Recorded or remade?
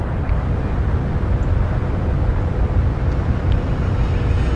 recorded